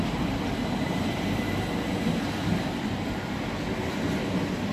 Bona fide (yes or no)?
yes